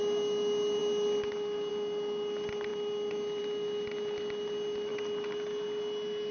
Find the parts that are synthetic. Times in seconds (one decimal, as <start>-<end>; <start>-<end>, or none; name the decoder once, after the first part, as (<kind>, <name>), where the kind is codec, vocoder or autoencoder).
none